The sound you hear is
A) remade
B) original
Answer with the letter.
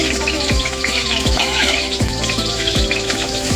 A